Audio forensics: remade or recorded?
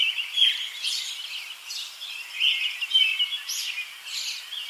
recorded